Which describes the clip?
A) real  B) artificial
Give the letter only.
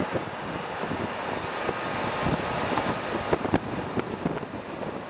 A